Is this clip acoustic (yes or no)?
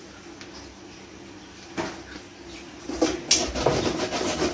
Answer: yes